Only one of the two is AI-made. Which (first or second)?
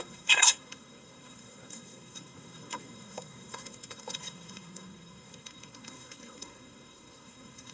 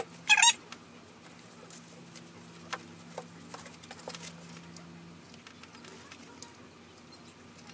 first